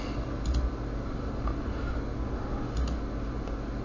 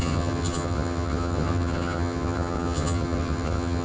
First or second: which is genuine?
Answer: first